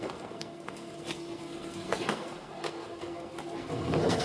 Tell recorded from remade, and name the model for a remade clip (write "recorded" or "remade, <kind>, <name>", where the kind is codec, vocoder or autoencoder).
remade, codec, SNAC